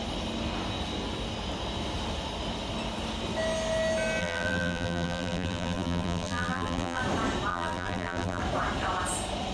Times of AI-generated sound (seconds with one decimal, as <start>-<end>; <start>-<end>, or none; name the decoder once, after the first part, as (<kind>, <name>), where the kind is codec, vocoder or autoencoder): 4.2-7.0 (vocoder, BigVGAN v2); 7.5-8.4